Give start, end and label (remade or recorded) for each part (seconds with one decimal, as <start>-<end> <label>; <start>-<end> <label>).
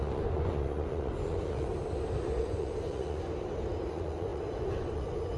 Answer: 0.0-1.7 remade; 1.7-2.4 recorded; 2.4-3.2 remade; 3.2-3.9 recorded; 3.9-5.4 remade